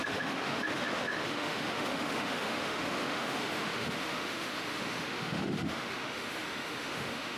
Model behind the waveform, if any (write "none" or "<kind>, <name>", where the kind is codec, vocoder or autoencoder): autoencoder, DAC-VAE